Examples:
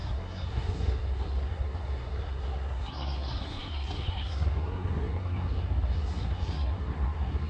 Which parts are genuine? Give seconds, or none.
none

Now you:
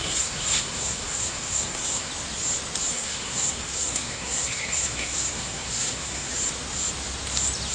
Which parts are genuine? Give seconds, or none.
2.1-2.9; 6.3-7.7

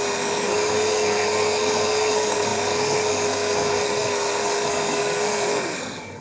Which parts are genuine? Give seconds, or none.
none

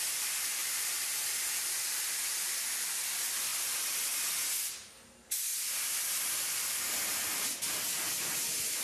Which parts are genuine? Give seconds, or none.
0.0-8.8

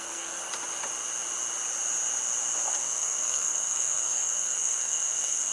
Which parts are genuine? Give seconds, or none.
0.4-2.7

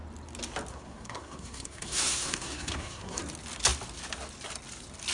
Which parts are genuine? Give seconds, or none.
0.0-0.7; 3.2-5.1

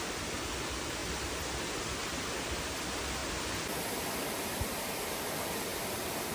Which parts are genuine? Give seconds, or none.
0.0-6.3